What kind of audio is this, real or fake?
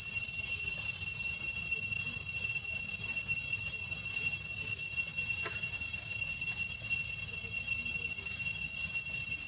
real